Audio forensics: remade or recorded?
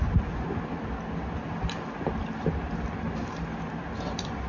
recorded